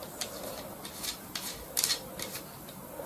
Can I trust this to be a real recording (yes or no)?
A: yes